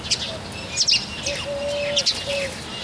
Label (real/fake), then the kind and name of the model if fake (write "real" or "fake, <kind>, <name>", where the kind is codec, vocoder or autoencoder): real